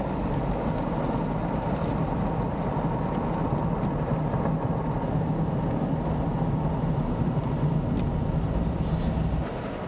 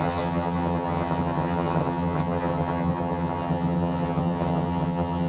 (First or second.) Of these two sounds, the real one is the first